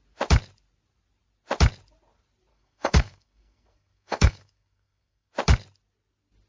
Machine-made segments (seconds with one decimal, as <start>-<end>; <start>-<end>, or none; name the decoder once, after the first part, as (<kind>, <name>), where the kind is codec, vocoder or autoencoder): 2.5-5.3 (codec, SNAC)